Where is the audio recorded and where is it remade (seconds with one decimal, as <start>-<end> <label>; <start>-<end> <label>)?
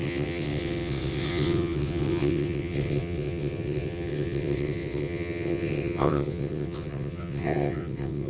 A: 0.0-8.3 remade